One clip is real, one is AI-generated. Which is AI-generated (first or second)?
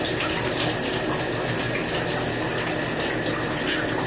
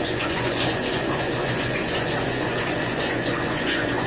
second